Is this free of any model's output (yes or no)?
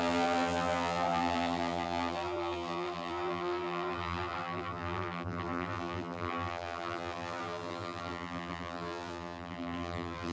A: no